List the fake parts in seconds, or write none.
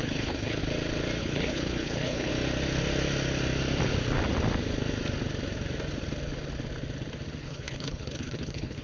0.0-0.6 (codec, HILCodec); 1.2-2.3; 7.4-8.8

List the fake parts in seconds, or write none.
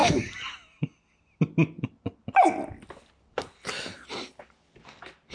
none